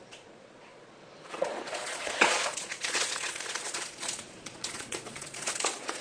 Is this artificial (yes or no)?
yes